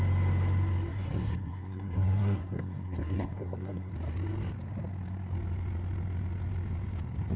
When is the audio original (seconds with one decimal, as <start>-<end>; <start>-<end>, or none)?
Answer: 0.0-0.9; 3.9-7.4